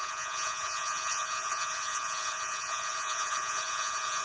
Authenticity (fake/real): fake